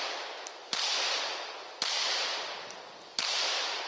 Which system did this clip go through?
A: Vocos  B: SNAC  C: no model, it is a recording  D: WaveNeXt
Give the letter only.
C